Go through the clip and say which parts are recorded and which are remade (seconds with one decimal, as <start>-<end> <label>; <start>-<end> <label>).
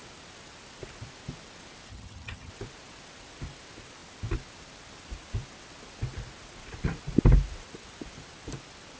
0.0-1.9 recorded; 1.9-2.5 remade; 2.5-9.0 recorded